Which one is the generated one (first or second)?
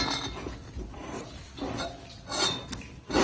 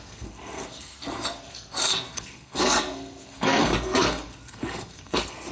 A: second